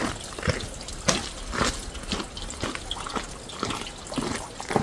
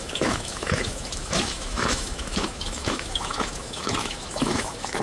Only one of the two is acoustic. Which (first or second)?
first